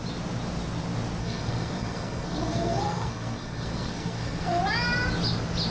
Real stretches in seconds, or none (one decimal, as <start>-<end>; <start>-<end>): 0.0-1.2; 4.6-5.7